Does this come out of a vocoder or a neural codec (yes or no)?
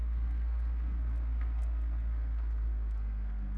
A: yes